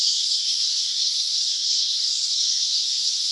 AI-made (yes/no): yes